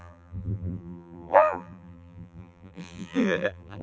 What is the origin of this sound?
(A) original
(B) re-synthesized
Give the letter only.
B